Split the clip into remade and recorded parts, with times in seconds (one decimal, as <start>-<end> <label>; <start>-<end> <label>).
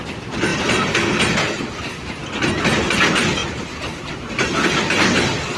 0.0-5.6 recorded